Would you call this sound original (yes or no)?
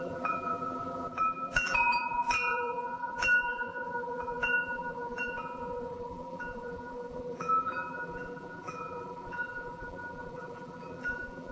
no